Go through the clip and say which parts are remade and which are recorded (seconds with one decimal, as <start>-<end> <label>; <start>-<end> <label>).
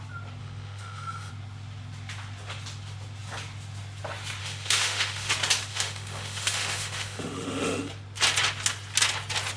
0.0-0.4 recorded; 0.4-1.3 remade; 1.3-4.4 recorded; 4.4-5.3 remade; 5.3-5.7 recorded; 5.7-7.9 remade; 7.9-9.6 recorded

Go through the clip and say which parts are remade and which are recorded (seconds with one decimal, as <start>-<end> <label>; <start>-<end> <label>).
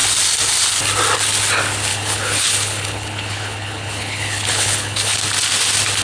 0.0-1.9 recorded; 1.9-5.2 remade; 5.2-6.0 recorded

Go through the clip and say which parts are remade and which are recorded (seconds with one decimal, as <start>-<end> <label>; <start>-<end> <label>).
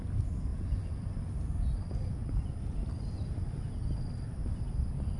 0.0-0.5 recorded; 0.5-3.6 remade; 3.6-5.2 recorded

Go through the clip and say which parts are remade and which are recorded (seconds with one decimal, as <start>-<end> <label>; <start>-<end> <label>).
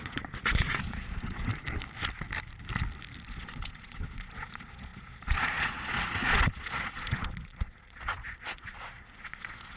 0.0-1.5 remade; 1.5-3.3 recorded; 3.3-9.8 remade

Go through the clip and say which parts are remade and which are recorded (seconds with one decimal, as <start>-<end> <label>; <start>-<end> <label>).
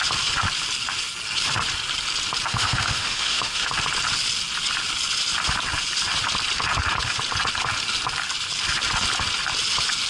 0.0-2.5 recorded; 2.5-3.7 remade; 3.7-10.1 recorded